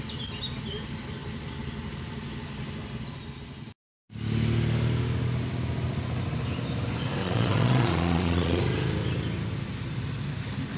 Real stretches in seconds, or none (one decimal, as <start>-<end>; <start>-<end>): 0.0-7.2; 8.6-10.8